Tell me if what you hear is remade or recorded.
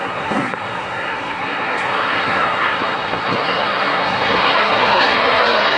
remade